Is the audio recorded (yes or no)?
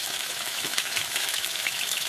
no